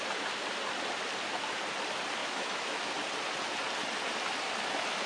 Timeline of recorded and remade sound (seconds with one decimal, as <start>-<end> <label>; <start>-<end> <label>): 0.0-2.2 recorded; 2.2-2.9 remade; 2.9-5.1 recorded